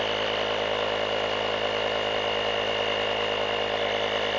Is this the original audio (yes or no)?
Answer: yes